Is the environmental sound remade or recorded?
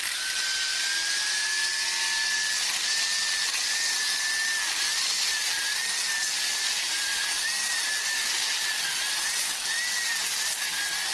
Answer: recorded